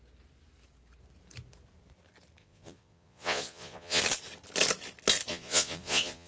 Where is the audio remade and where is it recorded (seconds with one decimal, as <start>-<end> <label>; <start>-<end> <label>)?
0.0-2.4 recorded; 2.4-4.0 remade; 4.0-5.3 recorded; 5.3-6.3 remade